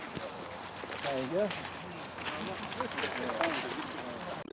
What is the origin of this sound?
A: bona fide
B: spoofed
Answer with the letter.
A